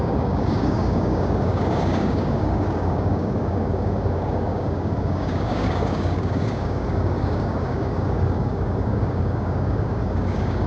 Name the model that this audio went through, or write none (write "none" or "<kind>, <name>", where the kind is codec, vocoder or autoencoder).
codec, DAC